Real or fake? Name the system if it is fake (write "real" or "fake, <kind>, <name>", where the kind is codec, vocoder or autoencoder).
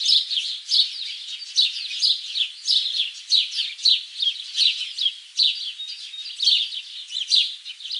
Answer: real